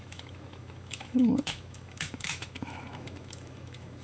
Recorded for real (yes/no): no